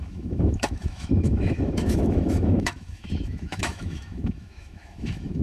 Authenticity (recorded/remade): remade